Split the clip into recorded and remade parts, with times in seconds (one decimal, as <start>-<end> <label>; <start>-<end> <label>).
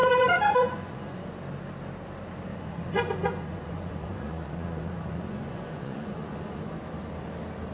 0.0-1.2 remade; 1.2-2.5 recorded; 2.5-6.6 remade; 6.6-7.7 recorded